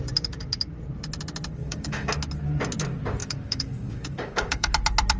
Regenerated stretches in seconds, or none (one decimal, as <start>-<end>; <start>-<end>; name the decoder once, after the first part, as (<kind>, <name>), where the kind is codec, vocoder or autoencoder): 1.6-2.1 (codec, DAC); 3.2-4.7

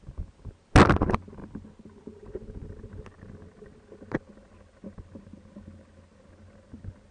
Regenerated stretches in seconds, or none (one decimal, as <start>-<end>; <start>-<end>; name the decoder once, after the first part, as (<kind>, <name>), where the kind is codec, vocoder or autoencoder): none

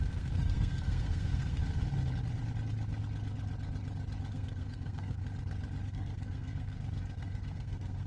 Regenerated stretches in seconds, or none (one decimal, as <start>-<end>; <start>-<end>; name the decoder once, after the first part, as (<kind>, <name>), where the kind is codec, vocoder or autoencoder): 0.0-1.6 (codec, SNAC); 4.3-5.2; 5.9-8.1